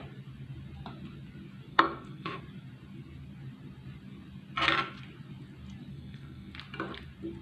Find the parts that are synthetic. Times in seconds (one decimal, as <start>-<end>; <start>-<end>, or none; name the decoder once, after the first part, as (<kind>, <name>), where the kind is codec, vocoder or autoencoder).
1.7-2.4 (codec, SNAC); 5.9-6.5